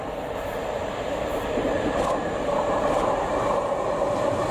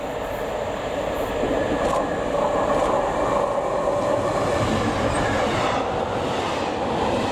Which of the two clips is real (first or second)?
second